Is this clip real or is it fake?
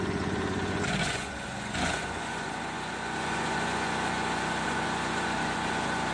fake